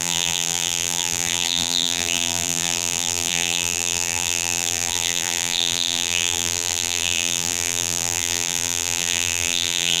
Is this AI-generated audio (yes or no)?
yes